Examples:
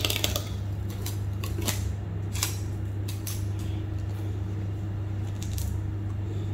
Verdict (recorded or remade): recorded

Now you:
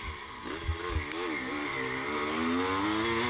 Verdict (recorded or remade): recorded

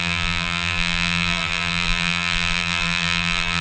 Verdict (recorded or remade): remade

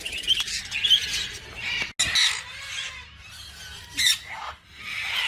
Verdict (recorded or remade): recorded